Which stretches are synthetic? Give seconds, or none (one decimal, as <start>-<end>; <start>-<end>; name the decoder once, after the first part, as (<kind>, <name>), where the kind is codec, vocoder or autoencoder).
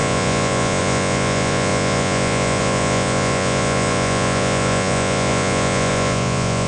0.0-6.7 (vocoder, Vocos)